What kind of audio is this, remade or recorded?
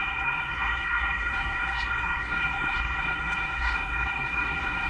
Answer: remade